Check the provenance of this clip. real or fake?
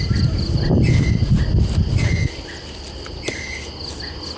real